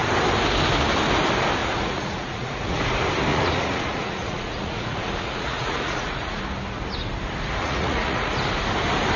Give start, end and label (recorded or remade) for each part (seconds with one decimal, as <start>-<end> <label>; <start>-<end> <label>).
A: 0.0-1.6 recorded; 1.6-2.8 remade; 2.8-3.3 recorded; 3.3-6.4 remade; 6.4-7.6 recorded; 7.6-8.3 remade; 8.3-9.2 recorded